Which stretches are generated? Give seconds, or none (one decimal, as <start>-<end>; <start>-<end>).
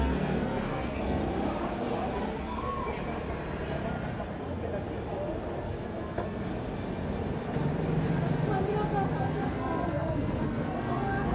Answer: 0.0-1.2; 2.4-2.8; 5.6-6.5; 9.2-11.3